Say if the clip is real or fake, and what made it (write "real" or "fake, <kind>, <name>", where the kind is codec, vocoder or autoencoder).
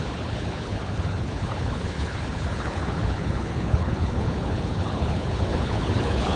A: fake, codec, HILCodec